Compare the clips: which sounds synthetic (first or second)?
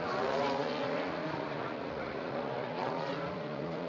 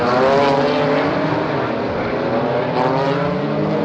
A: first